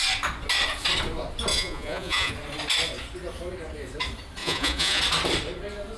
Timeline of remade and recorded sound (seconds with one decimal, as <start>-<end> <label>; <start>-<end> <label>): 0.0-1.5 recorded; 1.5-2.3 remade; 2.3-4.4 recorded; 4.4-5.0 remade; 5.0-6.0 recorded